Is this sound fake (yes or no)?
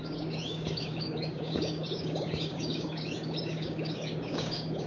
yes